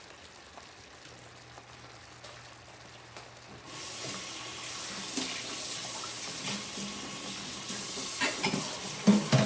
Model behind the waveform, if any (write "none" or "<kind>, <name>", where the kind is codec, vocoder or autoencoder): none